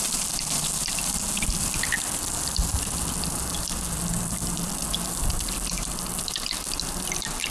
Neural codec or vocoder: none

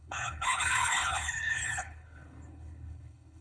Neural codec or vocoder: codec, HILCodec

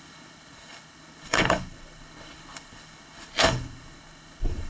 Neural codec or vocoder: codec, HILCodec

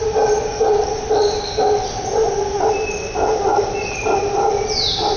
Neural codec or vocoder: none